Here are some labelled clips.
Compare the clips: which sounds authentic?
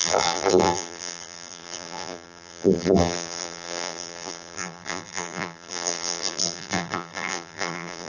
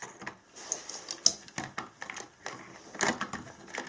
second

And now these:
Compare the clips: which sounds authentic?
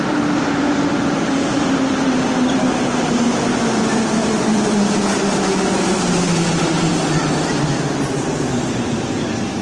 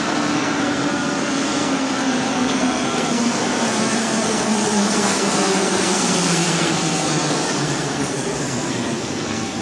first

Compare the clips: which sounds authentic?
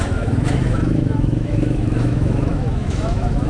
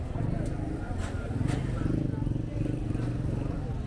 second